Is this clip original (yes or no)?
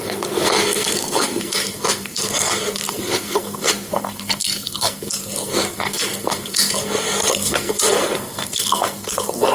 no